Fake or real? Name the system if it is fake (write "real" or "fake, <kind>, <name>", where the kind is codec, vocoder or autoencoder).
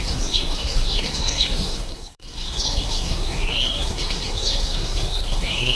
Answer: fake, codec, SNAC